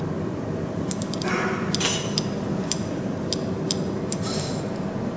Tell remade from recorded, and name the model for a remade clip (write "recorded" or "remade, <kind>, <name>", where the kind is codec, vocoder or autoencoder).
recorded